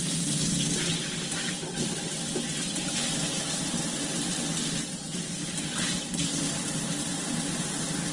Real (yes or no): yes